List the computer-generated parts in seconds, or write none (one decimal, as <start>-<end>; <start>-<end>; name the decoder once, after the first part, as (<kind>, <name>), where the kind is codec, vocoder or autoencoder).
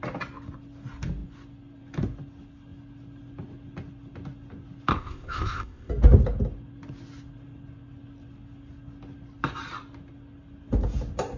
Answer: 4.9-5.9 (codec, ZipCodec)